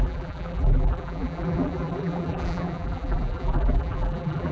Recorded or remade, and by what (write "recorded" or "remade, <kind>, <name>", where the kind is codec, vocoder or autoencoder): remade, vocoder, BigVGAN v2